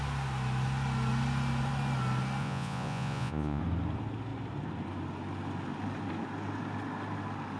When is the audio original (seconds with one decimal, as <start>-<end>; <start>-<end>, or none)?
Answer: 0.0-2.4; 3.6-7.6